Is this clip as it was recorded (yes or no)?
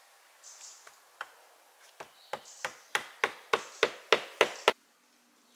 yes